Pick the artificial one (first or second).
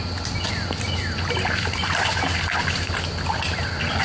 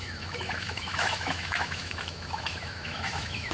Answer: second